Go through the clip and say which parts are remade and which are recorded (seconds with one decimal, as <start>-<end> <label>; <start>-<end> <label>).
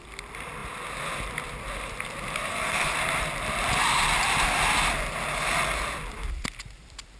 0.0-2.5 recorded; 2.5-3.0 remade; 3.0-7.2 recorded